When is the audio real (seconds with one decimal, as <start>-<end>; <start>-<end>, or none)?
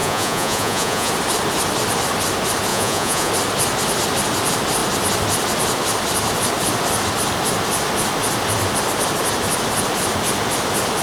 1.1-2.7; 3.3-11.0